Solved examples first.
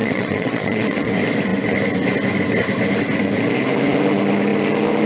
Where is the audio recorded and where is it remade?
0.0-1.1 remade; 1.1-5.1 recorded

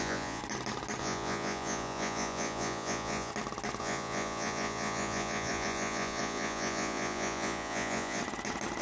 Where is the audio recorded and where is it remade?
0.0-0.4 remade; 0.4-1.0 recorded; 1.0-3.3 remade; 3.3-3.8 recorded; 3.8-8.2 remade; 8.2-8.8 recorded

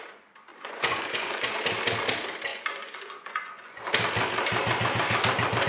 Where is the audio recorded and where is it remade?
0.0-0.5 recorded; 0.5-1.5 remade; 1.5-2.5 recorded; 2.5-3.9 remade; 3.9-5.7 recorded

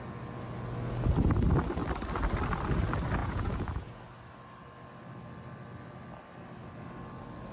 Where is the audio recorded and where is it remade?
0.0-3.2 recorded; 3.2-3.9 remade; 3.9-7.5 recorded

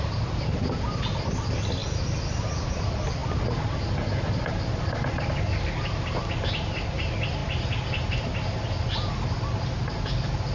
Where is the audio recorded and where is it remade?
0.0-10.5 recorded

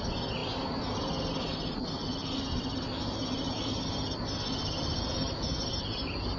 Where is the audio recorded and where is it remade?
0.0-6.4 recorded